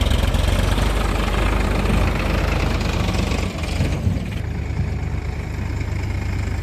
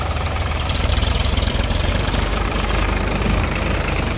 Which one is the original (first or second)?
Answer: first